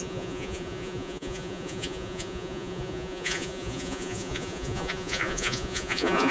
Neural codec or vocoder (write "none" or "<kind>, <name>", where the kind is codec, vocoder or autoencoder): vocoder, Vocos